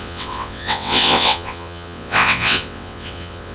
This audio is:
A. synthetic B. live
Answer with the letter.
A